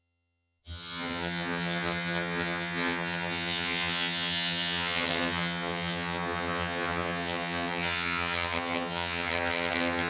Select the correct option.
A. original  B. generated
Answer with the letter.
B